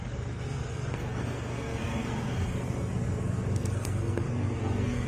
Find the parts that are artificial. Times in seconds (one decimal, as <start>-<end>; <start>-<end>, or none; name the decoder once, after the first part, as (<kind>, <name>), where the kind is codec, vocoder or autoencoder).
0.0-5.1 (codec, SNAC)